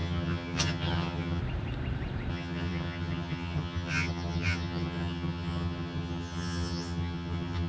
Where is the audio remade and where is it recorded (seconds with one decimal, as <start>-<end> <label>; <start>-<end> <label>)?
0.0-1.4 remade; 1.4-2.3 recorded; 2.3-7.7 remade